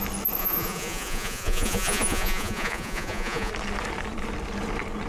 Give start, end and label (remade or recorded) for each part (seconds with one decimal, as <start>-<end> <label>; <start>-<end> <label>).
0.0-0.4 recorded; 0.4-3.5 remade; 3.5-5.1 recorded